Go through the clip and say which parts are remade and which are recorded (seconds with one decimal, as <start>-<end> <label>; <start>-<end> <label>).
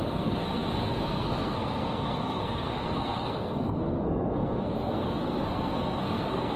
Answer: 0.0-6.6 remade